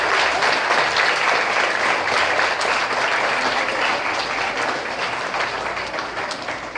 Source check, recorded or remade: recorded